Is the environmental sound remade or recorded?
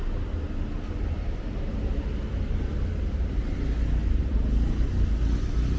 recorded